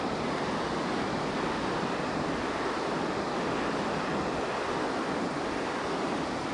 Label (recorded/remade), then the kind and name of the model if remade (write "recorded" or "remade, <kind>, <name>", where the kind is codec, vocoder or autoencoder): recorded